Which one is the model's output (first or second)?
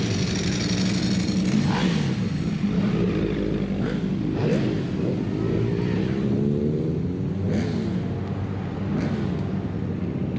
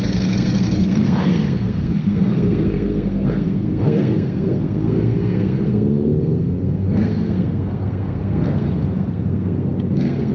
second